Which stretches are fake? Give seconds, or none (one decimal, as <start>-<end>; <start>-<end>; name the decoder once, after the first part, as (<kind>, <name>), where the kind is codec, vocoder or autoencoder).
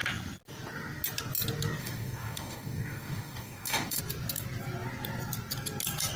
1.8-4.0 (codec, DAC)